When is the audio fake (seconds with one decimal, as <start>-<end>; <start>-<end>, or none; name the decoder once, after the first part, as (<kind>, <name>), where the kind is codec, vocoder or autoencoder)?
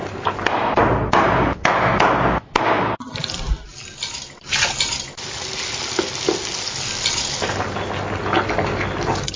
none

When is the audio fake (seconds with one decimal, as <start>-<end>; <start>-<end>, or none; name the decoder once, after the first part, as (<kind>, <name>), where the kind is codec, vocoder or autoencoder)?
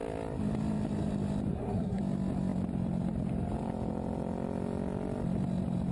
1.5-2.0 (codec, SNAC)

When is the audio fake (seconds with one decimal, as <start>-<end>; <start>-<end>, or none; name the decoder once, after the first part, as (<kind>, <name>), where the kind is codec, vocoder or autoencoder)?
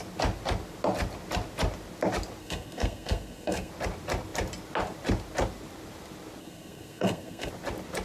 2.4-3.7 (codec, SNAC); 6.4-7.5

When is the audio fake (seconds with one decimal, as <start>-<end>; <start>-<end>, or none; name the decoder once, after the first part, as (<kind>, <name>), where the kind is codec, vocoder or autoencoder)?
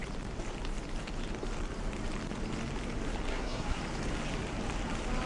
3.3-3.8 (codec, SNAC)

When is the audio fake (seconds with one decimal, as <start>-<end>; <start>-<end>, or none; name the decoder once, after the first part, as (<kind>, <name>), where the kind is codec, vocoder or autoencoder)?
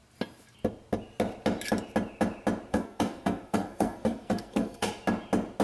2.7-4.9 (codec, SNAC)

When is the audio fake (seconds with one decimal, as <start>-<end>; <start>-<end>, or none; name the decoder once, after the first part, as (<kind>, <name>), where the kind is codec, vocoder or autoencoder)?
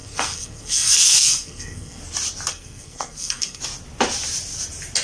0.0-2.0 (codec, SNAC); 2.5-3.6